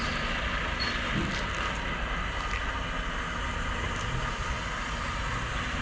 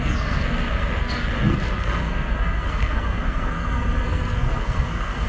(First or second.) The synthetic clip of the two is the second